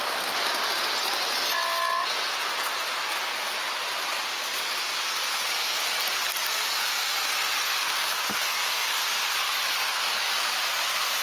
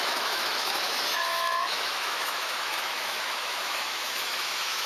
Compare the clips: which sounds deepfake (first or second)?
second